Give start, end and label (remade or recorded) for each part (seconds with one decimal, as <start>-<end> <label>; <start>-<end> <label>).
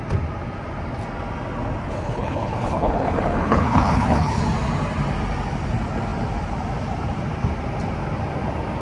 0.0-1.8 recorded; 1.8-4.4 remade; 4.4-8.8 recorded